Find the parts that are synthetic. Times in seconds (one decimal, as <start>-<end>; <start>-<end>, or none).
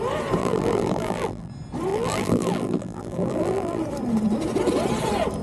0.4-1.5; 1.9-3.8